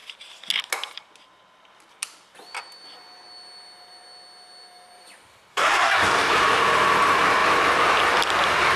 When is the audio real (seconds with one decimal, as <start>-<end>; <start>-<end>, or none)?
0.0-5.5; 6.3-8.8

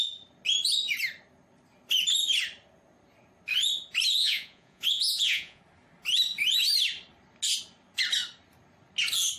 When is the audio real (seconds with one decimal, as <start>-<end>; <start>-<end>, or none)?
0.0-4.2; 5.6-9.4

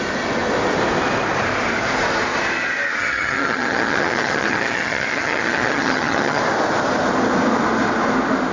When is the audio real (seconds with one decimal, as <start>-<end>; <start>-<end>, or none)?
0.0-3.0; 6.4-8.5

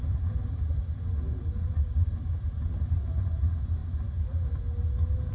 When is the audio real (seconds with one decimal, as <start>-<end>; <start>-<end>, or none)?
0.0-5.3